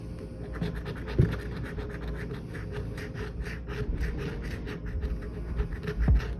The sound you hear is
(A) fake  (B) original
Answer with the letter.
B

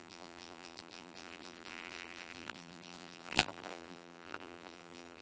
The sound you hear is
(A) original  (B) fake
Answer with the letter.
B